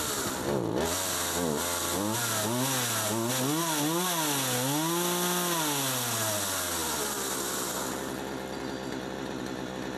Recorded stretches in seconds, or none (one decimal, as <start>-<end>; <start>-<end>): 0.0-10.0